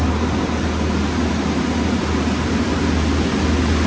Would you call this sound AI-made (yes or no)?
no